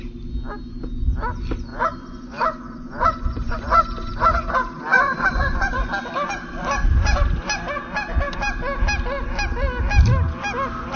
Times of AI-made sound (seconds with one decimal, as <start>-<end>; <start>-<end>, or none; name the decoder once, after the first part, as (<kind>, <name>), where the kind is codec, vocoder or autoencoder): 1.7-5.9 (vocoder, Vocos)